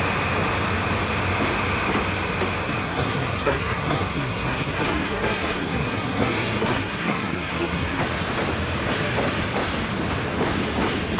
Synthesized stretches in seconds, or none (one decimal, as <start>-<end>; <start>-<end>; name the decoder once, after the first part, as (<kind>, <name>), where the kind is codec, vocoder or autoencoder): 2.8-8.0 (codec, SNAC)